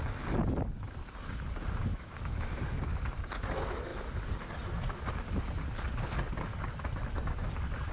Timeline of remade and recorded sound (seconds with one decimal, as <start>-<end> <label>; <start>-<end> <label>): 0.0-1.9 recorded; 1.9-2.6 remade; 2.6-7.9 recorded